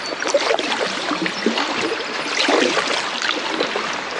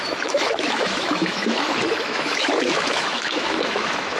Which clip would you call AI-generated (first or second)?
second